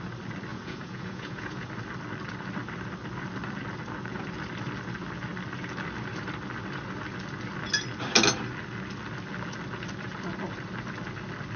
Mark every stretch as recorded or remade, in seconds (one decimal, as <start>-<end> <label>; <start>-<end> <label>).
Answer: 0.0-0.5 recorded; 0.5-1.7 remade; 1.7-11.6 recorded